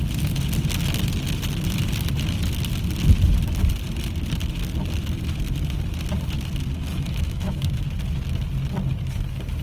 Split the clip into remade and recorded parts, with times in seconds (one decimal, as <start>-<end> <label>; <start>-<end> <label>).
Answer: 0.0-6.9 recorded; 6.9-7.7 remade; 7.7-9.6 recorded

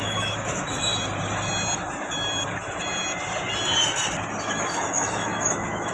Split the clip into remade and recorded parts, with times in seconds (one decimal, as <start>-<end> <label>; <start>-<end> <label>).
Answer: 0.0-0.9 remade; 0.9-4.4 recorded; 4.4-5.9 remade

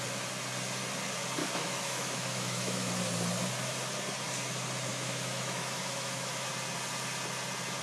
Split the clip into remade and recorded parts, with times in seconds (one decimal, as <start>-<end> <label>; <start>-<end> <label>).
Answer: 0.0-1.4 recorded; 1.4-2.9 remade; 2.9-4.9 recorded; 4.9-6.5 remade; 6.5-7.8 recorded

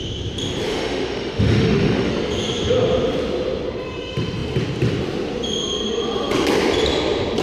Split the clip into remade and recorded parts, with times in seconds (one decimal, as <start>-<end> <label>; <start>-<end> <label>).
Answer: 0.0-0.7 recorded; 0.7-2.1 remade; 2.1-7.4 recorded

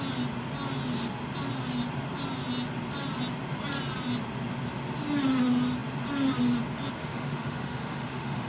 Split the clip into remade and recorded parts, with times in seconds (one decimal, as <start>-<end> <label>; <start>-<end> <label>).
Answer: 0.0-7.0 recorded; 7.0-8.5 remade

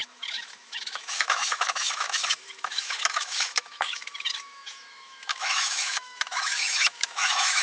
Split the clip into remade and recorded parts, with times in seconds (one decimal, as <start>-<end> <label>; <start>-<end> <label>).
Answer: 0.0-7.6 remade